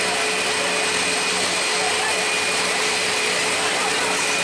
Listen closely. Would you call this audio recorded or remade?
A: recorded